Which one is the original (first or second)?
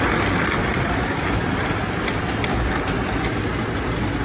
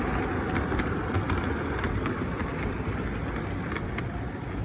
second